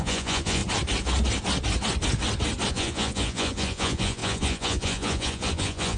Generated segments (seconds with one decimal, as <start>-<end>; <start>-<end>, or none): 0.0-0.6; 2.7-6.0

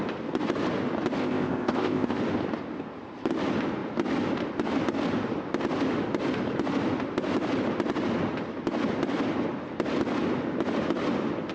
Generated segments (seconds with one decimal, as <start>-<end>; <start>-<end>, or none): 1.2-2.2

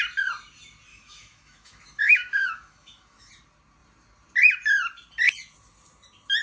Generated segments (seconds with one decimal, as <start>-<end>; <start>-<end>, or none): 0.9-3.3